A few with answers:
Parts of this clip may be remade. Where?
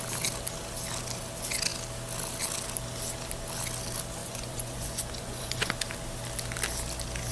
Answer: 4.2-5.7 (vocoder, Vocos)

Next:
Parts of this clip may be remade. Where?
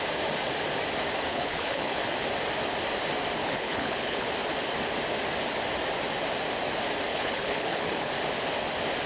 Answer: 1.3-2.0 (codec, HILCodec); 3.4-4.3; 7.1-8.1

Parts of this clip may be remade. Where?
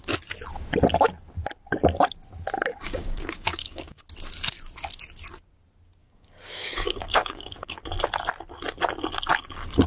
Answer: 2.7-4.0 (codec, DAC); 6.0-7.8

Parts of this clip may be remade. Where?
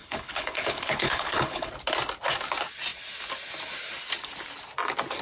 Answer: 0.0-1.7 (codec, HILCodec)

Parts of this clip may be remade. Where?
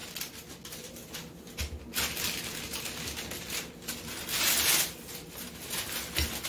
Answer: none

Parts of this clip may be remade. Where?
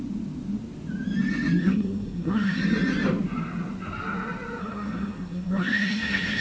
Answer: 1.6-2.6 (codec, SNAC); 4.6-6.4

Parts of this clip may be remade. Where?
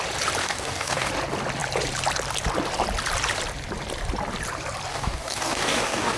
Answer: 0.4-1.1 (codec, DAC); 4.9-6.2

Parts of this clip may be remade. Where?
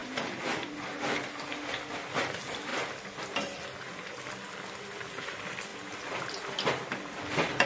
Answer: none